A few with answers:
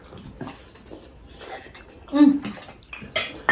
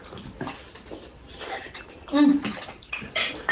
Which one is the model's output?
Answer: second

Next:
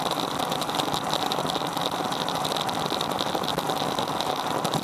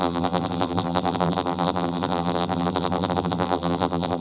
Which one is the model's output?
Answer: second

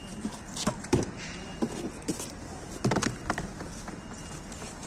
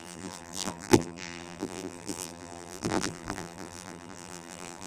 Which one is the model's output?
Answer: second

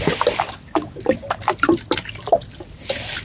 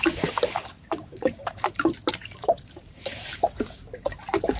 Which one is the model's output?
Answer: second